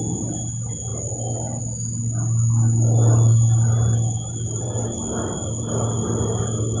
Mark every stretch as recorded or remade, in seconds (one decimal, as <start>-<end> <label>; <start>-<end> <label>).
0.0-6.8 recorded